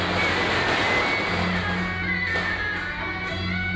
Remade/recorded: recorded